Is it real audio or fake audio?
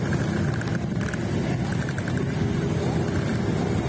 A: real